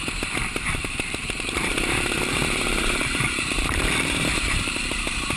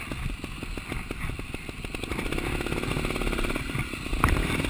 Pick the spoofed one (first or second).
first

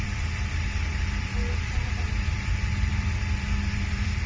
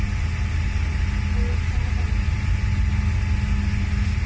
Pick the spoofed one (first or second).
first